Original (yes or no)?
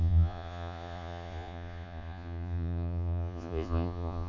no